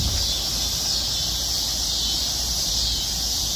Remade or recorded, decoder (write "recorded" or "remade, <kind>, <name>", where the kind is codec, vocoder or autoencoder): recorded